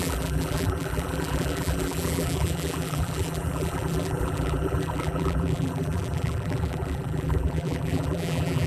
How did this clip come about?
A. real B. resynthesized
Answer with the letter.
B